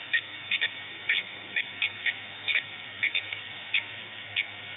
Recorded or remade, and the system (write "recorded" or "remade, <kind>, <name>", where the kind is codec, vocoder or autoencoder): remade, codec, SNAC